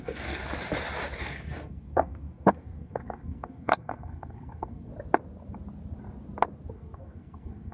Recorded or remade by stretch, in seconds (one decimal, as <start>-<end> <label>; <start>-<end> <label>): 0.0-0.4 remade; 0.4-1.2 recorded; 1.2-4.9 remade; 4.9-6.7 recorded; 6.7-7.7 remade